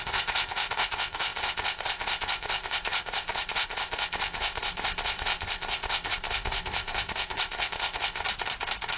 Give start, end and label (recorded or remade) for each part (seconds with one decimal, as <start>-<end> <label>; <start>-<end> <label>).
0.0-8.2 remade; 8.2-9.0 recorded